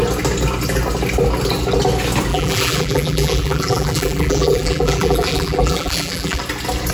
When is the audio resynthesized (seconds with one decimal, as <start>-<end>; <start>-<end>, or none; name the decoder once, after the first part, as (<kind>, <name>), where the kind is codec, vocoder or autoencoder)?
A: 2.3-6.4 (vocoder, BigVGAN v2)